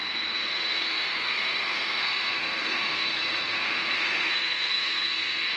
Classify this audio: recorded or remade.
remade